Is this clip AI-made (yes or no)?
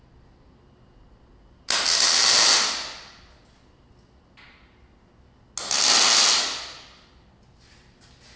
no